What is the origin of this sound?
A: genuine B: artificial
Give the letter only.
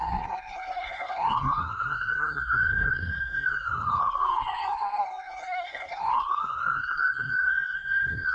B